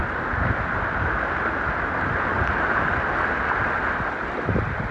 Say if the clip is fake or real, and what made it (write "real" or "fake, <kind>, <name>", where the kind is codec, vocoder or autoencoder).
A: real